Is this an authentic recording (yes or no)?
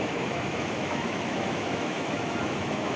no